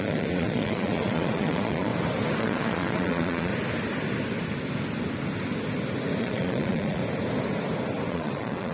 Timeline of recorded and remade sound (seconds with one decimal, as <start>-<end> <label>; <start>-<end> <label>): 0.0-1.9 remade; 1.9-2.4 recorded; 2.4-3.5 remade; 3.5-6.2 recorded; 6.2-7.0 remade; 7.0-8.1 recorded; 8.1-8.7 remade

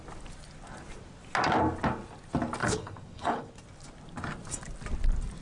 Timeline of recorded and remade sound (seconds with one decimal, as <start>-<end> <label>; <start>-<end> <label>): 0.0-2.6 recorded; 2.6-3.5 remade; 3.5-5.4 recorded